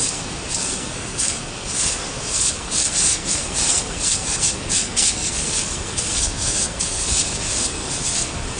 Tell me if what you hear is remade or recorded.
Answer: remade